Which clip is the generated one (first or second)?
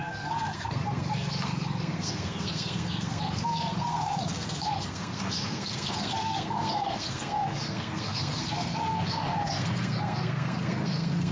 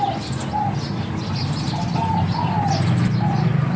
first